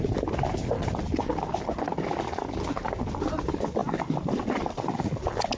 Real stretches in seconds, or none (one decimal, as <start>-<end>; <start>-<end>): 0.0-5.6